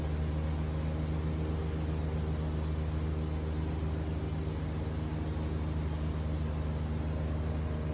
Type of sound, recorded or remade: recorded